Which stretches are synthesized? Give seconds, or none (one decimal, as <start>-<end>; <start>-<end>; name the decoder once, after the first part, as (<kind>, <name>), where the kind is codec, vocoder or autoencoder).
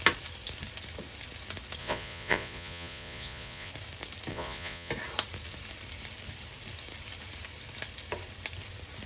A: 1.8-3.7 (vocoder, Vocos); 4.3-4.9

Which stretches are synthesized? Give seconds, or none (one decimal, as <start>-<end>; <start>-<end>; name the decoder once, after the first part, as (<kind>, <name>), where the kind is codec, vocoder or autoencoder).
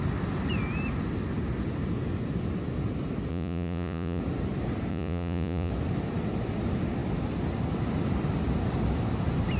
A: 3.3-4.2 (vocoder, Vocos); 4.9-5.7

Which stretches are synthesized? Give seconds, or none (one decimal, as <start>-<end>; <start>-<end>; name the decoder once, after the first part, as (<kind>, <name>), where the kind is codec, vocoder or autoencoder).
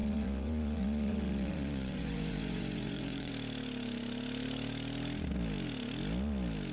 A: 0.0-3.3 (vocoder, Vocos)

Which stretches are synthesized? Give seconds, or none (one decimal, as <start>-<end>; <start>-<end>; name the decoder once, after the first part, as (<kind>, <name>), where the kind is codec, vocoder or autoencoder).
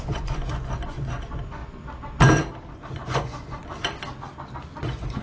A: 0.0-1.6 (vocoder, Vocos); 2.7-3.6; 4.8-5.2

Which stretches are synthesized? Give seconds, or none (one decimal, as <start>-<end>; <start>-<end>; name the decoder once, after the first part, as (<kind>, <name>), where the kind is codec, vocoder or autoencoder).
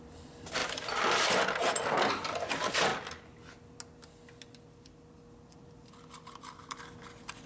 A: none